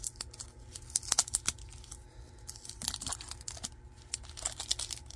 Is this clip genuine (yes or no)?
yes